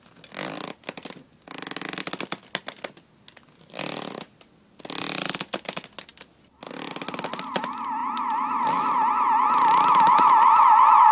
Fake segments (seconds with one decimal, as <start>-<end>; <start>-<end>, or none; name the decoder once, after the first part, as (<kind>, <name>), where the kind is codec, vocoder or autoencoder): none